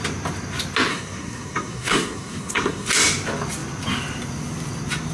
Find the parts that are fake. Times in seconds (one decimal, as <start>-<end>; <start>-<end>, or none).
0.9-2.9